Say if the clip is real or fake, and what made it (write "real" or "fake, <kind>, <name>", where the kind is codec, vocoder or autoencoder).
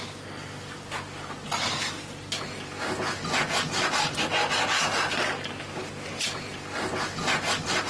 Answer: real